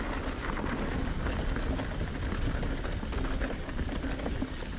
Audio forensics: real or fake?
real